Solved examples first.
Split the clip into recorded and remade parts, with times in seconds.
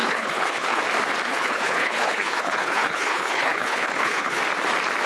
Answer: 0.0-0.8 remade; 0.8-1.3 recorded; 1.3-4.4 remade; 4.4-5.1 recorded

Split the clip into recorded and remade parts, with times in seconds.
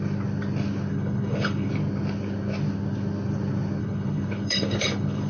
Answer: 0.0-0.9 recorded; 0.9-1.7 remade; 1.7-3.8 recorded; 3.8-5.3 remade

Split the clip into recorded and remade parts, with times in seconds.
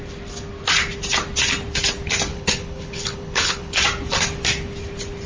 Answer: 0.0-2.3 recorded; 2.3-3.8 remade; 3.8-5.3 recorded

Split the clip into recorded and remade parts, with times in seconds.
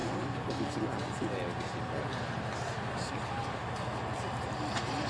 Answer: 0.0-5.1 recorded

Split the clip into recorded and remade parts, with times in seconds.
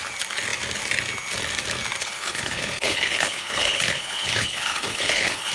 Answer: 0.0-2.0 recorded; 2.0-5.5 remade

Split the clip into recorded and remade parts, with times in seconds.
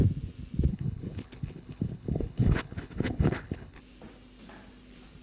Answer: 0.0-0.7 recorded; 0.7-3.8 remade; 3.8-5.2 recorded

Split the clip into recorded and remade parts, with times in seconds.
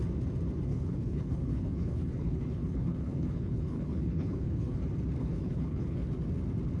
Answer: 0.0-0.7 recorded; 0.7-4.8 remade; 4.8-5.2 recorded; 5.2-6.1 remade; 6.1-6.8 recorded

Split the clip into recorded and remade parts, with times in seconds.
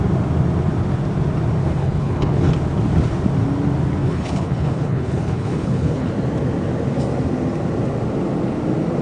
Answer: 0.0-1.6 recorded; 1.6-2.5 remade; 2.5-4.0 recorded; 4.0-6.1 remade; 6.1-9.0 recorded